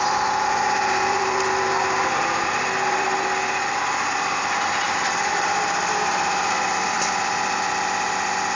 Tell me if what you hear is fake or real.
fake